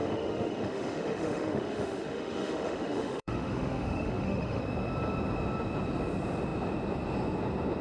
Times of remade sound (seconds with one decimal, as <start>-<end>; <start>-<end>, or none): 0.0-4.6